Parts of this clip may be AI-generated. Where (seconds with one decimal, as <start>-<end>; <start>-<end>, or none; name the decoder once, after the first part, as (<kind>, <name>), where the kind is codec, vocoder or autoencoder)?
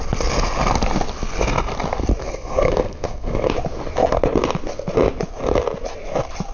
2.2-3.5 (codec, SNAC)